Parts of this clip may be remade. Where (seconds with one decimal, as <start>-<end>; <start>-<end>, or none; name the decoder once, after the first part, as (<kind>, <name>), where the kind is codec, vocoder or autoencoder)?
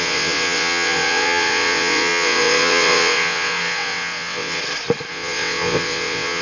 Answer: 0.0-4.6 (vocoder, WaveNeXt); 5.1-6.4